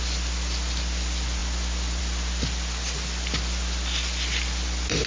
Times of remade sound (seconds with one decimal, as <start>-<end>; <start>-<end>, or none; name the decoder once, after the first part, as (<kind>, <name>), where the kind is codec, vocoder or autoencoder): none